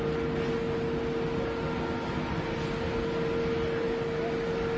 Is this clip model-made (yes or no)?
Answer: no